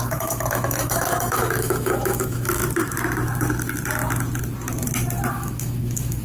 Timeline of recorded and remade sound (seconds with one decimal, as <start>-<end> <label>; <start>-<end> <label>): 0.0-2.6 remade; 2.6-5.3 recorded; 5.3-6.2 remade